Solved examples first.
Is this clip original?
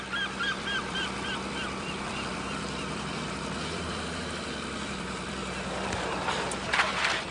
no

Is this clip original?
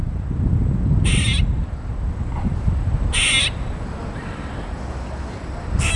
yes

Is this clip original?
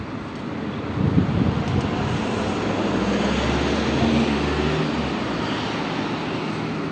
yes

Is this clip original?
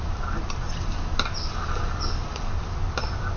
yes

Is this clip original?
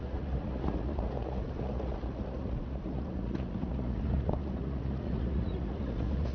no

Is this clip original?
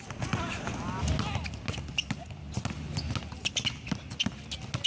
yes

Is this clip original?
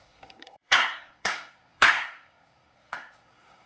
no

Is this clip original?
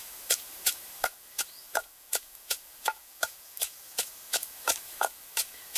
no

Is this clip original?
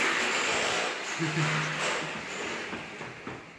yes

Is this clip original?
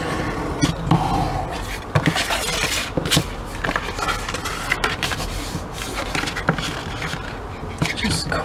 yes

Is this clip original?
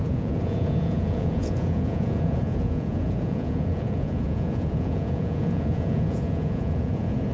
no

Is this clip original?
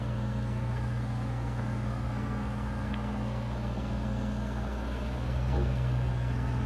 no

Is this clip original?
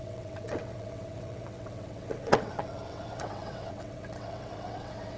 no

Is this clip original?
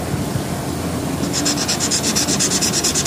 yes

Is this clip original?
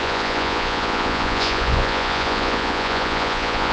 no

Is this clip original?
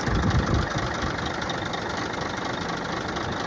yes